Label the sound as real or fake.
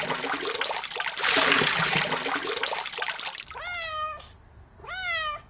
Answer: real